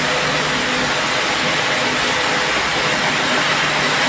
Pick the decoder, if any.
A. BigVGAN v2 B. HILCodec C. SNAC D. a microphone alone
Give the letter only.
D